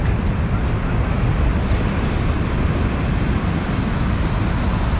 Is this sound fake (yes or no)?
no